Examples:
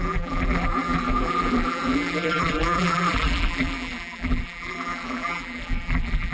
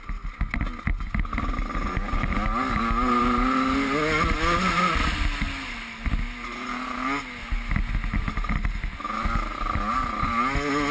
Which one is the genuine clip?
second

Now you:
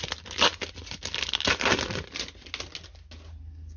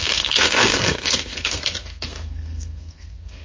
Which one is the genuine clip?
first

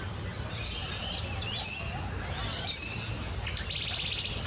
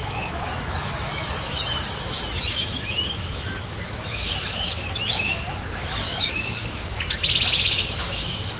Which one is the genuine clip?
first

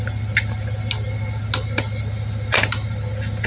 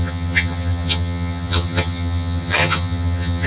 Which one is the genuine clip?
first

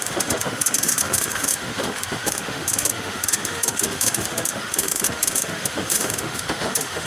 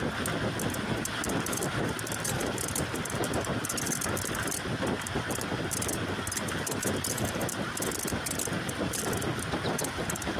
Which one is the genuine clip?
second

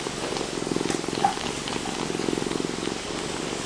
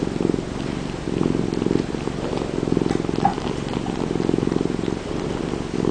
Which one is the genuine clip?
second